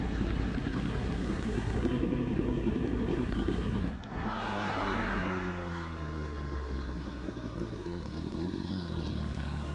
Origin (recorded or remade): remade